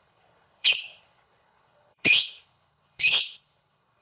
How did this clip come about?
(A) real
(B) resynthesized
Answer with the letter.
B